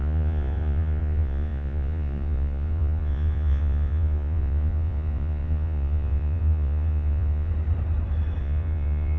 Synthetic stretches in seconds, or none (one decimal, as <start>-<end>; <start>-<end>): 0.0-7.5; 8.4-9.2

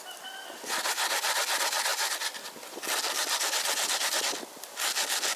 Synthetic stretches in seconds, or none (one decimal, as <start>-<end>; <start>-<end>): 1.9-5.4

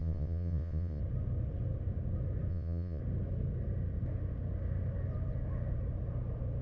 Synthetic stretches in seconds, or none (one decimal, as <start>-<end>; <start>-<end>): 0.0-1.0; 2.5-3.0